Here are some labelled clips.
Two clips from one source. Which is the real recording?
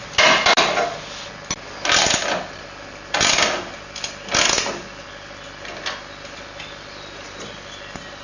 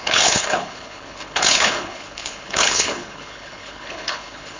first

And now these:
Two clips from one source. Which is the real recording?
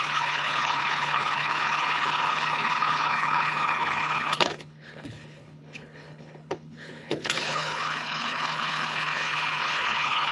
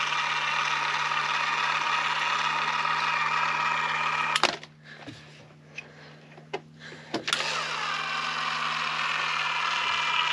second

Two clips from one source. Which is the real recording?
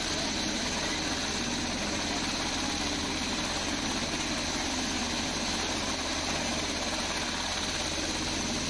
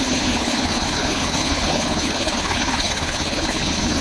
first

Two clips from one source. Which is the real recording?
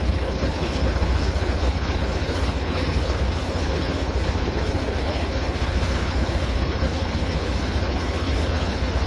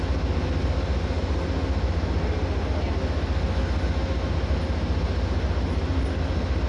second